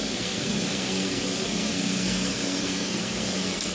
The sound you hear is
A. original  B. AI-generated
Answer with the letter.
B